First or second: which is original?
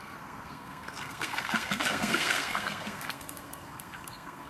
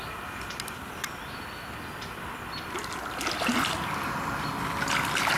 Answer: second